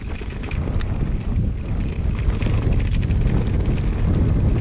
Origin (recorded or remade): recorded